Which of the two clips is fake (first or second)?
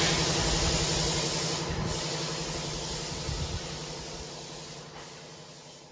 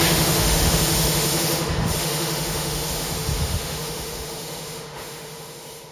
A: second